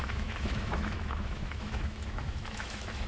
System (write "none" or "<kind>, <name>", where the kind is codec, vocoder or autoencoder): autoencoder, DAC-VAE